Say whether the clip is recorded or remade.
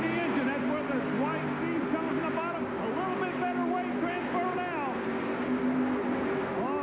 recorded